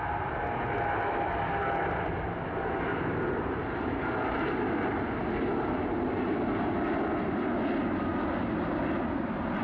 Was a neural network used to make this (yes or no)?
no